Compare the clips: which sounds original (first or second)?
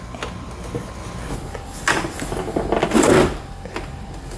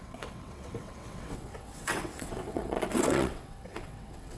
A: first